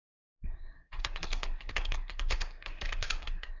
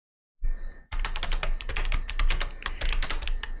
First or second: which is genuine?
second